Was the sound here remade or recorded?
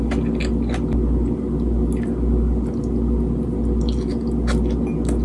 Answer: recorded